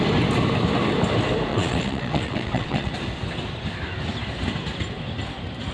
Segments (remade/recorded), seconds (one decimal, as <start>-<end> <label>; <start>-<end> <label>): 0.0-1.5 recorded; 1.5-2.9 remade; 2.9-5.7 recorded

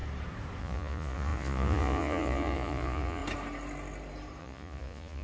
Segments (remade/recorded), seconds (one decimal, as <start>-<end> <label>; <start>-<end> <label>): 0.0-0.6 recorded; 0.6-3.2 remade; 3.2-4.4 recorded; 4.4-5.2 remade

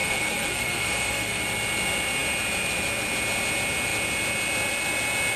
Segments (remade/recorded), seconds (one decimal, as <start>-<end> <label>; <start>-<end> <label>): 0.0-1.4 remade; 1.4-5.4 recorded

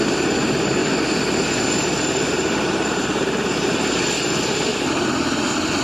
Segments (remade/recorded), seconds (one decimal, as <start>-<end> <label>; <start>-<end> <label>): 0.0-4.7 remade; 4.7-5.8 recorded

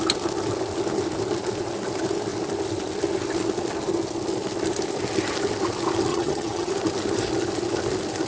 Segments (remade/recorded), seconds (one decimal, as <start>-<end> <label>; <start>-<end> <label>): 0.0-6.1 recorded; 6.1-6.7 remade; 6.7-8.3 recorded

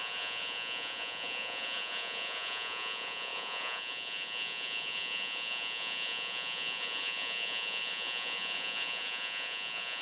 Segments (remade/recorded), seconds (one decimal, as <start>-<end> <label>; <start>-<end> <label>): 0.0-10.0 remade

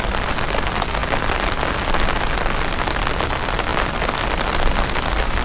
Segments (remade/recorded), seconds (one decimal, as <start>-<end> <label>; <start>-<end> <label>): 0.0-5.4 recorded